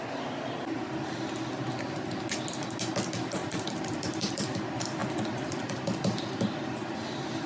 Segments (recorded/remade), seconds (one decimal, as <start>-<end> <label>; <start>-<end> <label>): 0.0-3.4 recorded; 3.4-4.6 remade; 4.6-5.0 recorded; 5.0-7.5 remade